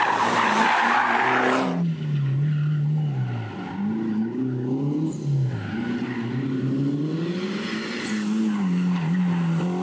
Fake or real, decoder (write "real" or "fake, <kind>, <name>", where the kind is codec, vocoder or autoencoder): real